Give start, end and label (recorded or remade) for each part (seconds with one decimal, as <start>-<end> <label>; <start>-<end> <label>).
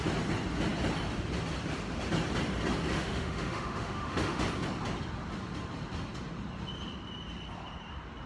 0.0-2.9 recorded; 2.9-4.4 remade; 4.4-8.3 recorded